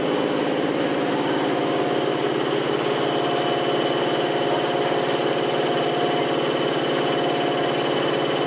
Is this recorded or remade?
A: recorded